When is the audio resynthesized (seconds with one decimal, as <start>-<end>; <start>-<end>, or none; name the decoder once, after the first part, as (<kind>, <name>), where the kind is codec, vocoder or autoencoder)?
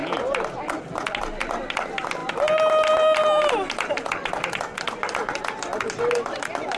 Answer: none